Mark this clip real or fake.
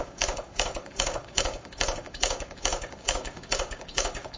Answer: fake